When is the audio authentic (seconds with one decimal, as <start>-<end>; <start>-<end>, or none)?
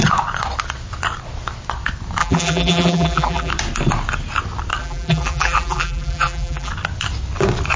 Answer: 0.0-2.2; 3.5-4.8; 6.7-7.8